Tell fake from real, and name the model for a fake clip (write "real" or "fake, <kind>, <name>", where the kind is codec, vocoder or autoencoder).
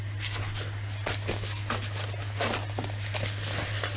real